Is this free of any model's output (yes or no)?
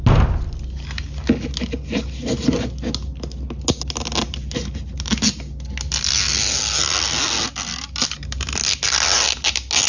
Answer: yes